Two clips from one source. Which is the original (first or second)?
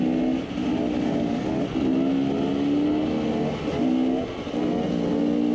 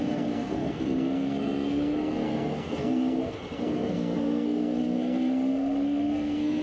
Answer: first